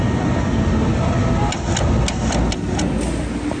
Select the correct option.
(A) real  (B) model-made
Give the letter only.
A